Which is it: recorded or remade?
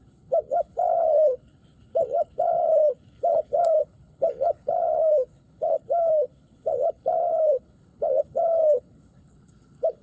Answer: remade